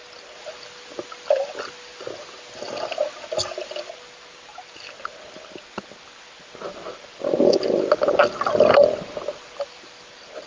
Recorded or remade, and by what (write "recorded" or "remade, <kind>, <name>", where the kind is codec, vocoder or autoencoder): recorded